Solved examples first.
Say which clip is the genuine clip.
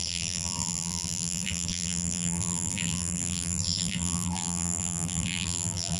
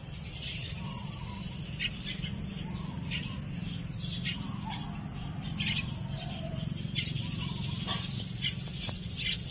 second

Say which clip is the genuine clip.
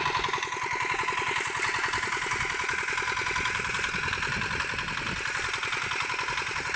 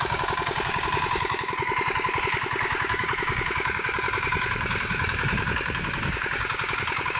first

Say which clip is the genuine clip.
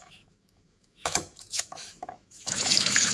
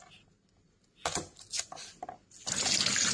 second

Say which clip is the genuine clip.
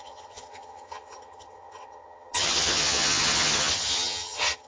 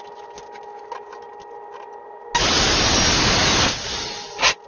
second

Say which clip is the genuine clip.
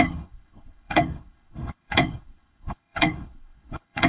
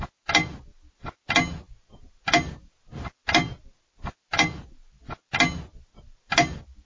second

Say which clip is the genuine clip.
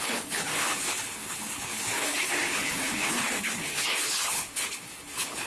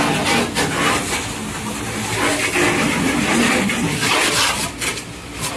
second